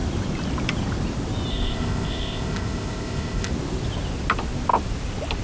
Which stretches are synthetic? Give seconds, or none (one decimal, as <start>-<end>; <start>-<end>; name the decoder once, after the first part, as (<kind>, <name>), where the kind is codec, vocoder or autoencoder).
1.5-3.5 (codec, ZipCodec)